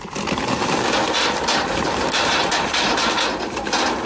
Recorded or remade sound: recorded